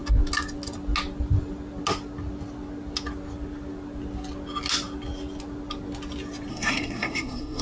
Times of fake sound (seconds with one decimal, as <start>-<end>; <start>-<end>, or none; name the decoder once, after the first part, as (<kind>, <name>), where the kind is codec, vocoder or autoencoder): 6.5-7.6 (codec, SNAC)